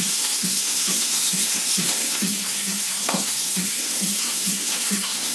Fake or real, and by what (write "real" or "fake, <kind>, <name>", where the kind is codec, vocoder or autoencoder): fake, codec, SNAC